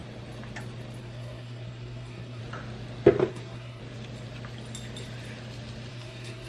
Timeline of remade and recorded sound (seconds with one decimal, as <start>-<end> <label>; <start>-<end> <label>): 0.0-1.0 recorded; 1.0-2.4 remade; 2.4-3.3 recorded; 3.3-3.8 remade; 3.8-5.9 recorded; 5.9-6.5 remade